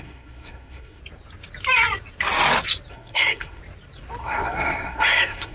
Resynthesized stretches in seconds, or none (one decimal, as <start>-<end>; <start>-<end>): 0.0-1.0; 2.9-3.6; 4.2-5.5